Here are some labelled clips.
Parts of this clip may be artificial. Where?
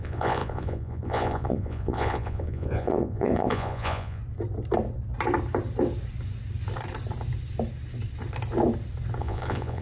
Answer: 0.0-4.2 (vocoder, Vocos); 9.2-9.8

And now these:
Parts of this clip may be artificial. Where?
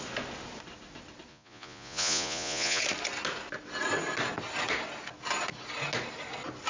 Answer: 1.3-2.8 (vocoder, Vocos)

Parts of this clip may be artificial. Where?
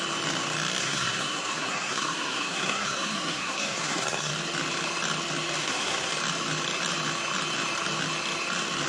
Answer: 0.8-4.3 (codec, SNAC); 5.6-6.1